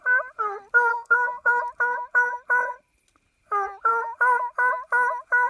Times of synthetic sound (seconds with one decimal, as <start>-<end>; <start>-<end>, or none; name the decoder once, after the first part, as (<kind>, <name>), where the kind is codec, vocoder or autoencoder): 0.9-1.6 (codec, SNAC)